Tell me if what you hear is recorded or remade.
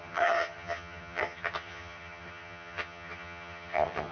remade